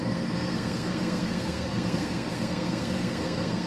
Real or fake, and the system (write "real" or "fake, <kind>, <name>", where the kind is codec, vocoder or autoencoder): fake, codec, SNAC